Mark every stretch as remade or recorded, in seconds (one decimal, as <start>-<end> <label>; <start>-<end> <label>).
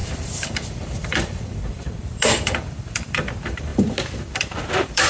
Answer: 0.0-3.7 remade; 3.7-4.3 recorded; 4.3-5.1 remade